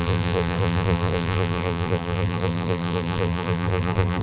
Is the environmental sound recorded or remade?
remade